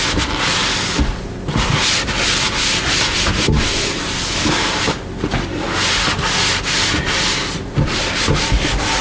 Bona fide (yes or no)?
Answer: yes